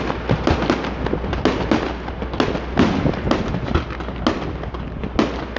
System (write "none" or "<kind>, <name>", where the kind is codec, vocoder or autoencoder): none